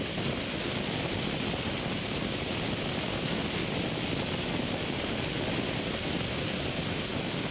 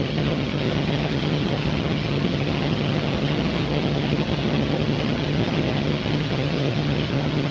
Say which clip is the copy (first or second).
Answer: second